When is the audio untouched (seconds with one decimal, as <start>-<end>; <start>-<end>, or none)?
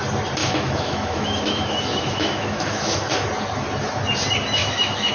0.0-0.4; 3.1-4.6